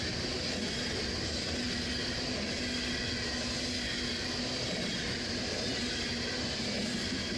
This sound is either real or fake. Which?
real